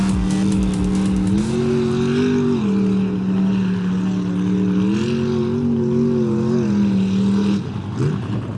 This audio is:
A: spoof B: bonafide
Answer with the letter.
B